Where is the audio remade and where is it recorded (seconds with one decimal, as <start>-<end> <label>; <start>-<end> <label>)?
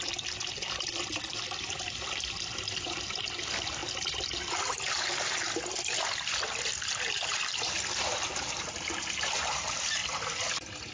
0.0-10.9 recorded